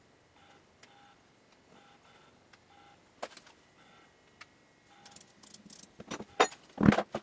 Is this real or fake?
real